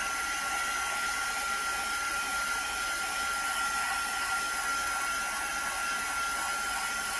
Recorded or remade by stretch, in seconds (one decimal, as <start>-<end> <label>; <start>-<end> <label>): 0.0-7.2 recorded